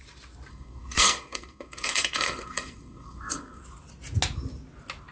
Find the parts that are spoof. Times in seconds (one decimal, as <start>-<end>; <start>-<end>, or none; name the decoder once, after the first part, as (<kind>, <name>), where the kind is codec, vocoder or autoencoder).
0.5-3.6 (codec, SNAC)